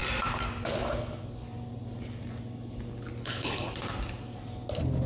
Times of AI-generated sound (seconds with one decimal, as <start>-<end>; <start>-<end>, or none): 3.2-3.7